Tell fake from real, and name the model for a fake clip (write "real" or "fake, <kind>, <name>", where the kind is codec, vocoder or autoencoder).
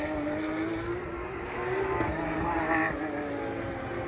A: real